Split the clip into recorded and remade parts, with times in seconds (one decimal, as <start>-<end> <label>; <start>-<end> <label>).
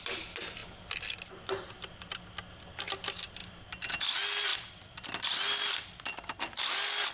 0.0-7.1 recorded